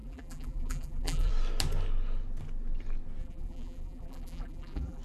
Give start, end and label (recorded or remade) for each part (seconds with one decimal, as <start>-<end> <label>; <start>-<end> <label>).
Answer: 0.0-1.3 remade; 1.3-3.2 recorded; 3.2-5.0 remade